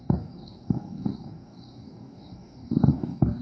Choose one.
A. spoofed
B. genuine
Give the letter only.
A